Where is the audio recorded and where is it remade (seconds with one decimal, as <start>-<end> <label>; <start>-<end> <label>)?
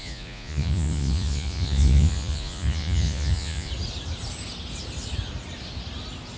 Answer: 0.0-3.7 remade; 3.7-6.4 recorded